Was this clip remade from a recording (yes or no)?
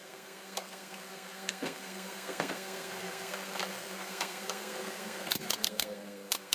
yes